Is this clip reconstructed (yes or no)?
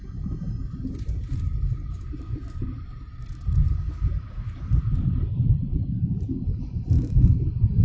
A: yes